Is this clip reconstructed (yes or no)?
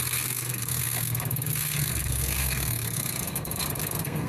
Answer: yes